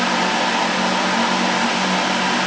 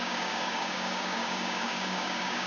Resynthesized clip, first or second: second